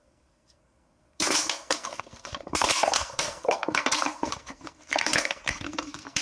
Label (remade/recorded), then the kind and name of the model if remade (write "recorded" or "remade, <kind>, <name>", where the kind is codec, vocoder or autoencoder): remade, codec, SNAC